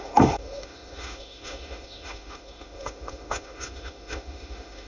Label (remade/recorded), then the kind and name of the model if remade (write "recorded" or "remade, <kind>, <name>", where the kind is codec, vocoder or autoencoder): remade, autoencoder, DAC-VAE